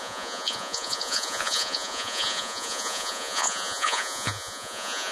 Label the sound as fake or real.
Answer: fake